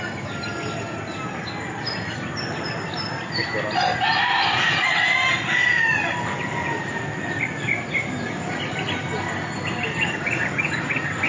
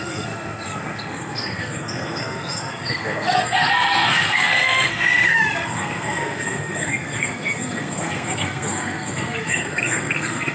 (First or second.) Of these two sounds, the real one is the first